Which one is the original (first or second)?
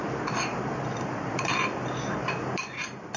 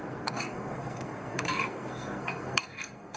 first